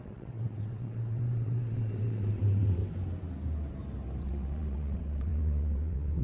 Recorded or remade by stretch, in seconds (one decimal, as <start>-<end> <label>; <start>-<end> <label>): 0.0-2.8 remade; 2.8-4.2 recorded; 4.2-6.2 remade